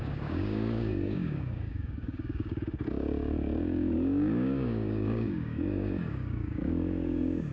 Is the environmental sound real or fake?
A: fake